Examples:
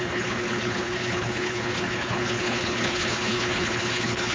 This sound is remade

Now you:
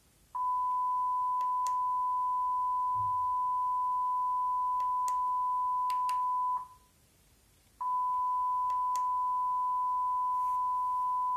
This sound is recorded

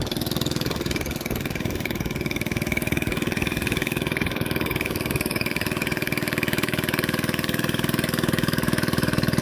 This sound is remade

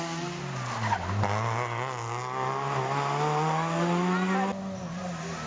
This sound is recorded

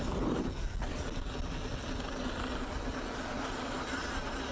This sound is recorded